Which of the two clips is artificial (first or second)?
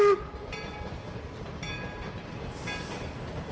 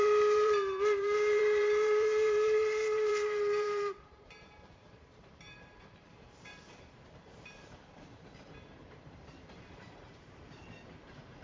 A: second